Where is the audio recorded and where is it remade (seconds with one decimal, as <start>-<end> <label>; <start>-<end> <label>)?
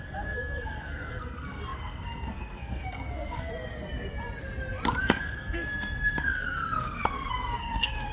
0.0-3.5 remade; 3.5-5.0 recorded; 5.0-8.1 remade